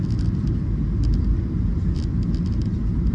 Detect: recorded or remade recorded